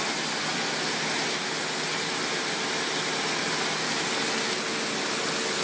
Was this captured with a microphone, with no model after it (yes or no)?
yes